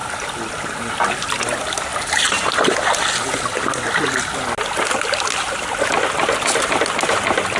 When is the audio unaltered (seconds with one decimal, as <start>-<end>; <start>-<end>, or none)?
0.0-7.6